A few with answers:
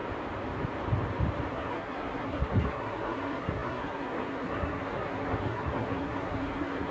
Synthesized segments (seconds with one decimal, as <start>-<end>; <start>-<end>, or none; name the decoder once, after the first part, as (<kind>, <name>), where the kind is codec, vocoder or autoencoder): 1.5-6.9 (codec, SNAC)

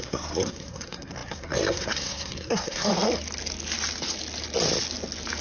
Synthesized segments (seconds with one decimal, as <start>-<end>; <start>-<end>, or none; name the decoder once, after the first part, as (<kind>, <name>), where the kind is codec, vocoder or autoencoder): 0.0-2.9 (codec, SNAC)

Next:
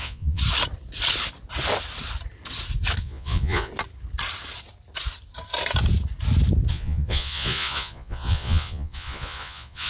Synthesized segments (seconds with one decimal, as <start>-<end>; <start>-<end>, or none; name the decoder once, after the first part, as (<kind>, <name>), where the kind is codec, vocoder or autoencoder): 0.0-0.4 (vocoder, Vocos); 3.0-3.7; 6.7-9.9